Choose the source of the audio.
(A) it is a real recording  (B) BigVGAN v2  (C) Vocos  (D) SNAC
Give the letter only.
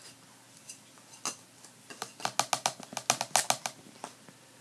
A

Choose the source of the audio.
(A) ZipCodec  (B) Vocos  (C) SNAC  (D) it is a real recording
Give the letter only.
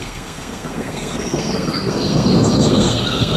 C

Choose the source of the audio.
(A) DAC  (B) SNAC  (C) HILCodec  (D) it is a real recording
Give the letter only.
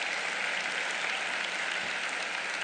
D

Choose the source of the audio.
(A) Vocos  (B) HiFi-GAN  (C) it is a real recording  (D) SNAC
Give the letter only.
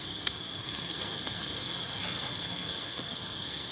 D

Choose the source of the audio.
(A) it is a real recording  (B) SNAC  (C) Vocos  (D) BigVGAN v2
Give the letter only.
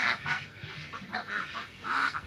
B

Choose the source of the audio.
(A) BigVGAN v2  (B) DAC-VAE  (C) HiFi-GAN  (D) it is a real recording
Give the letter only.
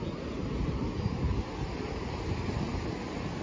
D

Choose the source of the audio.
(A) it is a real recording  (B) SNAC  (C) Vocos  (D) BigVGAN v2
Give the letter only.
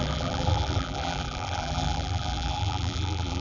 D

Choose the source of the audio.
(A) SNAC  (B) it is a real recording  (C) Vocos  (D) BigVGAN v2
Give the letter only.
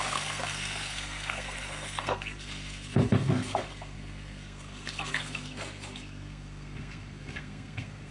A